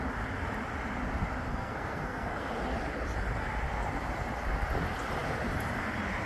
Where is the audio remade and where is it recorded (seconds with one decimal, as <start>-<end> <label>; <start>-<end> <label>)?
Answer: 0.0-1.5 recorded; 1.5-2.5 remade; 2.5-6.3 recorded